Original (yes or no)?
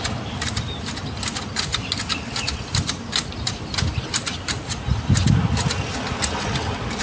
yes